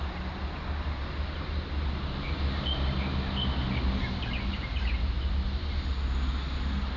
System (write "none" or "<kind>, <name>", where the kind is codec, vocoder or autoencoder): none